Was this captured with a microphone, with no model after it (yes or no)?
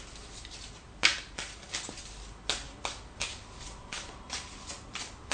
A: yes